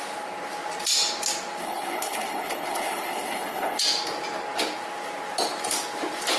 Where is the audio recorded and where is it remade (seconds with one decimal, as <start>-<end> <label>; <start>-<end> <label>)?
0.0-1.6 recorded; 1.6-3.8 remade; 3.8-6.4 recorded